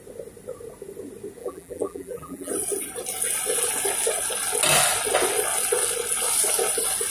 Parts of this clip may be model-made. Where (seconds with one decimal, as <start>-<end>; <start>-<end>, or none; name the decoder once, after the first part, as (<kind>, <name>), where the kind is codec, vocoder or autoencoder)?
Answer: 1.4-2.5 (vocoder, BigVGAN v2)